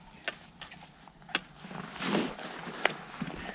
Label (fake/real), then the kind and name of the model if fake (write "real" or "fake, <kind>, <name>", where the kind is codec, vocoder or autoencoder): real